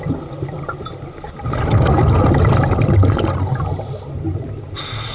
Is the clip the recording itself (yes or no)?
yes